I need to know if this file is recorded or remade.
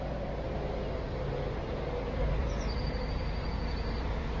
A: recorded